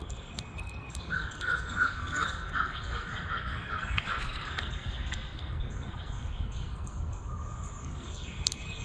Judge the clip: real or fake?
fake